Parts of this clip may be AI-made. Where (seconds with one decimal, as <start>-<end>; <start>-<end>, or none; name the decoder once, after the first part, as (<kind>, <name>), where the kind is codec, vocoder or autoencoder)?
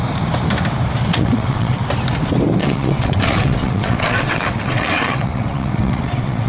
1.1-1.8 (vocoder, WaveNeXt); 2.6-6.5